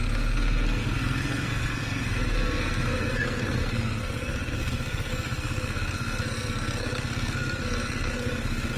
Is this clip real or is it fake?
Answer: fake